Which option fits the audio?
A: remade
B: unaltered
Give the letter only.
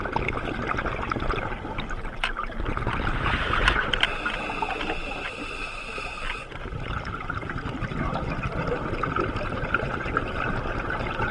B